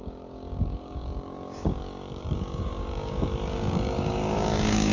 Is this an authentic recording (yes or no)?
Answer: no